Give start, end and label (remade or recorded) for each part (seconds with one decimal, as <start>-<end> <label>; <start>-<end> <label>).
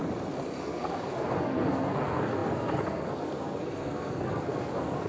0.0-0.6 recorded; 0.6-5.1 remade